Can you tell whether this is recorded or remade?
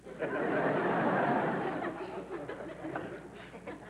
recorded